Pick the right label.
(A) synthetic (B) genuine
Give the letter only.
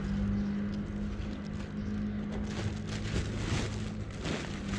B